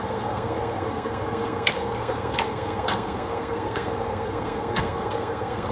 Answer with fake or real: fake